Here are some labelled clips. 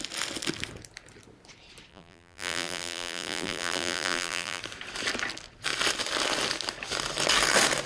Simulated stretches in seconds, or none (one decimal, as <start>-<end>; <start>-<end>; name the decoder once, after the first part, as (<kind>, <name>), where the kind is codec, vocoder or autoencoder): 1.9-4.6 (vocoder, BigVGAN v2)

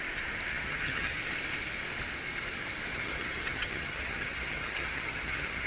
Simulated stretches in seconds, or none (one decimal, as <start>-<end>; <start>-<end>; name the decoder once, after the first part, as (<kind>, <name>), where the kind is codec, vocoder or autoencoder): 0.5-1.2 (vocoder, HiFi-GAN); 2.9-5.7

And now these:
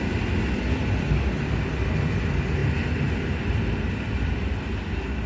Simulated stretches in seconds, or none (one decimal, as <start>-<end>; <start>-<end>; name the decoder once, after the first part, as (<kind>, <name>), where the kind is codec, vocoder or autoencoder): none